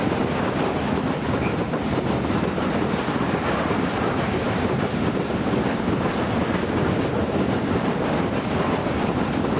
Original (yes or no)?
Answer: yes